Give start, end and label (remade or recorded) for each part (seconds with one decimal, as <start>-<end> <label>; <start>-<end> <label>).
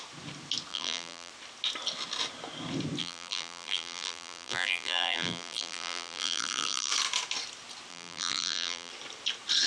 0.0-0.7 recorded; 0.7-1.3 remade; 1.3-3.0 recorded; 3.0-6.9 remade; 6.9-7.9 recorded; 7.9-8.9 remade; 8.9-9.7 recorded